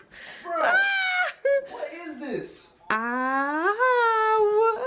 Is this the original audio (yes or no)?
yes